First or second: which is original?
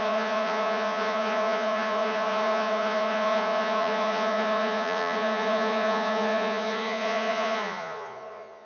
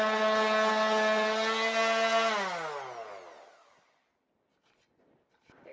second